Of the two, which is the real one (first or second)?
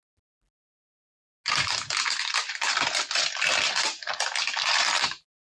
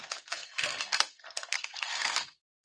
first